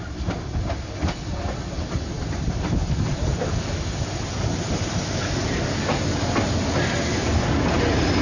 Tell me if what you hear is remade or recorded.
recorded